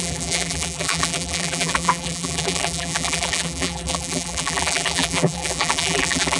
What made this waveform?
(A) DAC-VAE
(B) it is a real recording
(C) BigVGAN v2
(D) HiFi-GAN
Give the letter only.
C